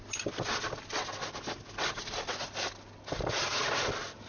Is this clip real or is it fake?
real